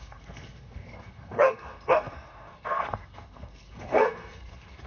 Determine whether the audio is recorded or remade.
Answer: remade